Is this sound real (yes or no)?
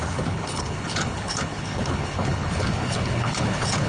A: no